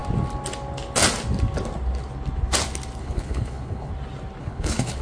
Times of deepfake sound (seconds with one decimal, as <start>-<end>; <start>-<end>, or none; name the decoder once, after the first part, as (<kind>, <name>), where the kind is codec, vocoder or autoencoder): 3.0-3.9 (codec, HILCodec); 4.4-5.0